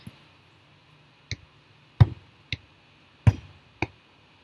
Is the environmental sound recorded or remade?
recorded